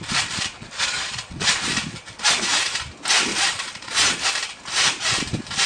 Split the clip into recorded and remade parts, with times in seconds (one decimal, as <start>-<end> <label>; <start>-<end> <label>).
0.0-0.6 recorded; 0.6-1.5 remade; 1.5-3.3 recorded; 3.3-4.3 remade; 4.3-5.7 recorded